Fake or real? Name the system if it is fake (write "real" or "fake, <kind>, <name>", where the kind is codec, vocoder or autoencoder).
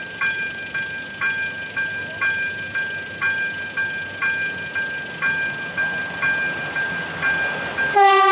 real